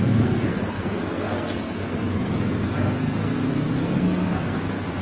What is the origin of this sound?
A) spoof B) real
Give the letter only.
A